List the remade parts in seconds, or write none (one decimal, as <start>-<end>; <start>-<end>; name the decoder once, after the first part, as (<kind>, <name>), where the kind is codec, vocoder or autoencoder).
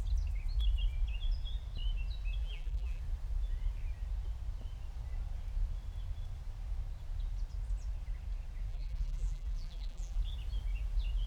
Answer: 2.4-3.0 (vocoder, BigVGAN v2); 8.7-10.2